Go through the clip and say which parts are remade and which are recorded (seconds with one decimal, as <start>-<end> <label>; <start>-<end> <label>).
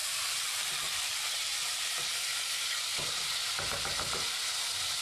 0.0-2.4 remade; 2.4-2.9 recorded; 2.9-3.6 remade; 3.6-5.0 recorded